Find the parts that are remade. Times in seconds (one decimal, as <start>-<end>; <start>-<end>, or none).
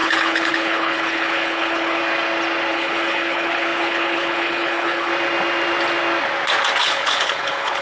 0.0-2.0; 2.7-5.1; 6.8-7.8